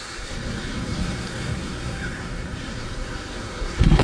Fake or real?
fake